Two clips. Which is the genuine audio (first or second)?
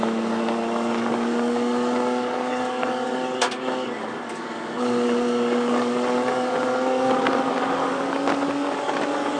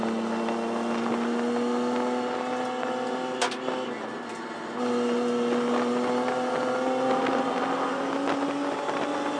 second